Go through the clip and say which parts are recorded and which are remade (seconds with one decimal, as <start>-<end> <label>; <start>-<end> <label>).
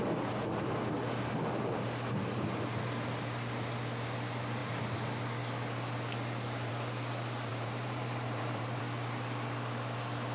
0.0-7.5 recorded; 7.5-8.8 remade; 8.8-10.3 recorded